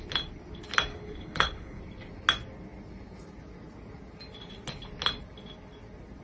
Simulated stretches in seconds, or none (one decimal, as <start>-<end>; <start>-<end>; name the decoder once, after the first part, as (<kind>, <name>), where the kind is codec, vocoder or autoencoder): 0.9-1.8 (codec, HILCodec)